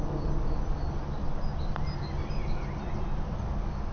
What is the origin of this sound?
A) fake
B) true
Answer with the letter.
B